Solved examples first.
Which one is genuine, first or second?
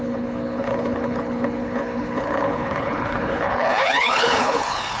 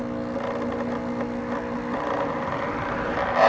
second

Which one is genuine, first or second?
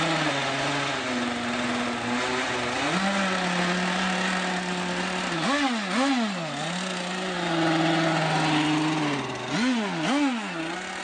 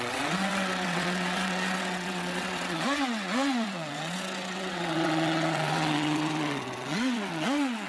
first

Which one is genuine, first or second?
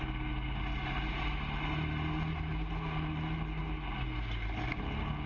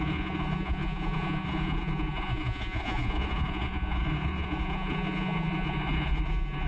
first